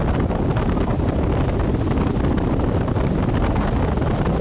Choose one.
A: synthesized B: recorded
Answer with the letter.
B